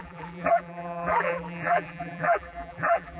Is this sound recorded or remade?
remade